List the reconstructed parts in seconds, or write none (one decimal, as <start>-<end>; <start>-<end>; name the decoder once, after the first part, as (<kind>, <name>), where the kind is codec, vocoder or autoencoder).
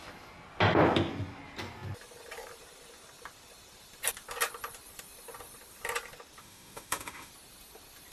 6.4-7.3 (autoencoder, DAC-VAE)